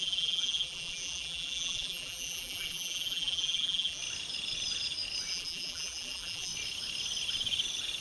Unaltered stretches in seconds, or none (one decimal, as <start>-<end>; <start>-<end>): 4.0-5.3; 6.5-8.0